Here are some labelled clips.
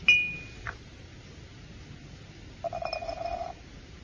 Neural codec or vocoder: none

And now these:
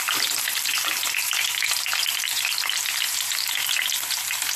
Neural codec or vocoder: none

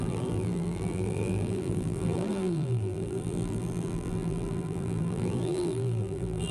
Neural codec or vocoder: vocoder, BigVGAN v2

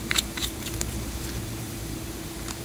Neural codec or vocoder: vocoder, BigVGAN v2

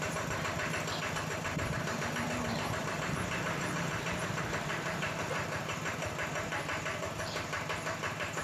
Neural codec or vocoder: vocoder, BigVGAN v2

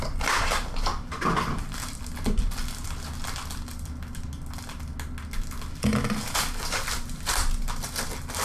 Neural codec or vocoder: none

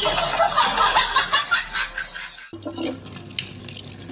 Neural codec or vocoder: none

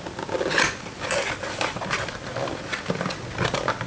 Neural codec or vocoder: none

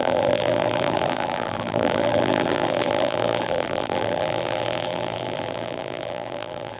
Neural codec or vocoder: vocoder, BigVGAN v2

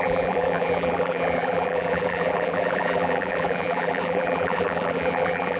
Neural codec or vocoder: vocoder, BigVGAN v2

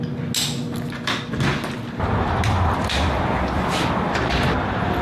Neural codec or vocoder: none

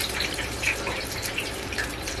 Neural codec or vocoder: vocoder, BigVGAN v2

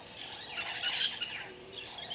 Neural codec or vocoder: none